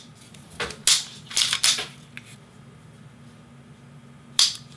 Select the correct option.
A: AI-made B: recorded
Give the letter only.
B